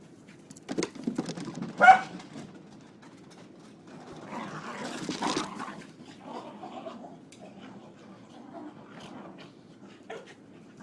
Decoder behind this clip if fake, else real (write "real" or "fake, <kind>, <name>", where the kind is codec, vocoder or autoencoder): real